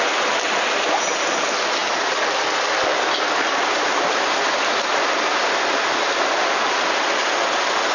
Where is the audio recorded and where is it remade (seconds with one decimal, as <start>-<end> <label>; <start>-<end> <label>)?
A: 0.0-7.9 recorded